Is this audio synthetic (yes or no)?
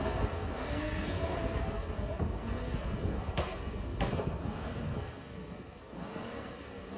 yes